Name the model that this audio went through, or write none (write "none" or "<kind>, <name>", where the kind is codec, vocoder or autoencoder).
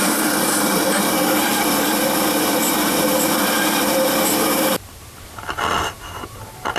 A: vocoder, BigVGAN v2